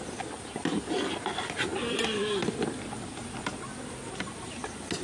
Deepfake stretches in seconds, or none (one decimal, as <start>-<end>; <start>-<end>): none